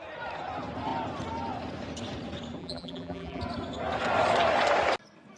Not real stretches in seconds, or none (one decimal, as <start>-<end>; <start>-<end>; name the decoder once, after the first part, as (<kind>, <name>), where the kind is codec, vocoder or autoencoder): 2.6-3.4 (vocoder, BigVGAN v2)